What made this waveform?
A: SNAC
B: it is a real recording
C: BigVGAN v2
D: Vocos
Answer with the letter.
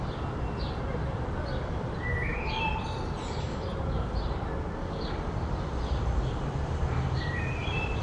C